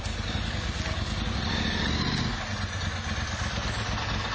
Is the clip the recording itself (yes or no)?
yes